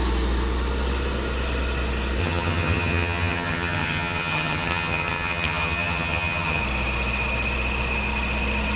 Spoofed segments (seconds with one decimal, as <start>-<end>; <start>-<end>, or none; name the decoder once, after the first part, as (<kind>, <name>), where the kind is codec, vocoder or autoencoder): 2.2-6.6 (vocoder, HiFi-GAN)